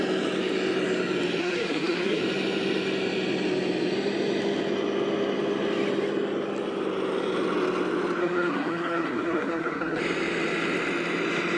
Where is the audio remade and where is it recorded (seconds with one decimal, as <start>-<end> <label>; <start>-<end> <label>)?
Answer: 0.0-1.4 recorded; 1.4-2.2 remade; 2.2-8.2 recorded; 8.2-10.0 remade; 10.0-11.6 recorded